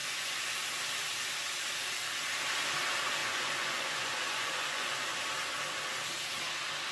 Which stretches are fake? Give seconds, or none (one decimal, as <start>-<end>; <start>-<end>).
0.0-0.6; 3.2-5.2